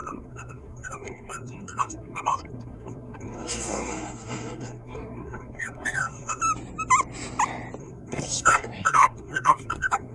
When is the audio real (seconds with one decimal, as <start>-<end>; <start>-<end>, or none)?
6.4-7.8